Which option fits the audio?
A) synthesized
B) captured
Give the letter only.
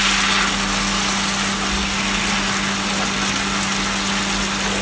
B